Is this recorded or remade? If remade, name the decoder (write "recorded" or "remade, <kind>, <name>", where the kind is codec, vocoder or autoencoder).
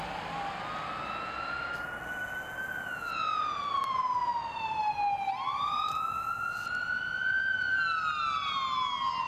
recorded